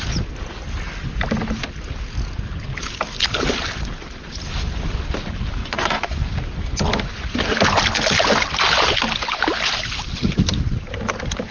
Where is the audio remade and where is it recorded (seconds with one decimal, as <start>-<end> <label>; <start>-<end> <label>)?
0.0-5.6 recorded; 5.6-6.3 remade; 6.3-11.5 recorded